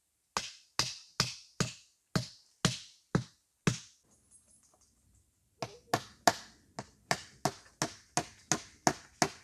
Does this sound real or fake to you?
real